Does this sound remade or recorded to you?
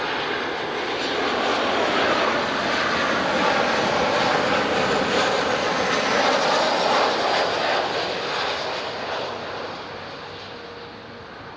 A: recorded